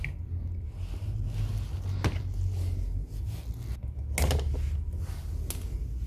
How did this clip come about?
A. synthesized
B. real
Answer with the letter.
B